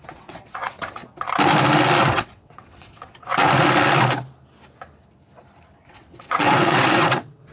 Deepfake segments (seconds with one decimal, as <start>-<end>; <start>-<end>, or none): 0.0-1.0; 2.0-3.3; 5.9-7.5